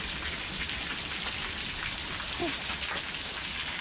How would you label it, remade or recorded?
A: recorded